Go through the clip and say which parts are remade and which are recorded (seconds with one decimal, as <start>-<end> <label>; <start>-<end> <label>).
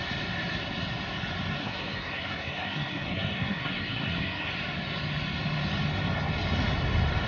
0.0-1.6 recorded; 1.6-4.5 remade; 4.5-7.3 recorded